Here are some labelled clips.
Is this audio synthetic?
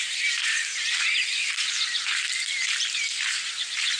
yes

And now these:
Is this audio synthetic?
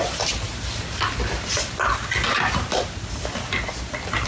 no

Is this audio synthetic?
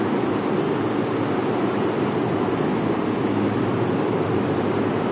no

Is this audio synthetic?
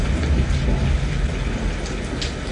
no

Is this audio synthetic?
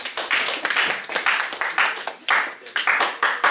no